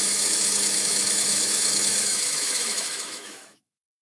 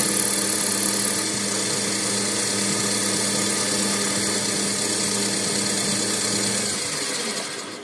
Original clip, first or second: second